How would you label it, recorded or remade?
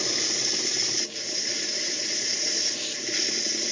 recorded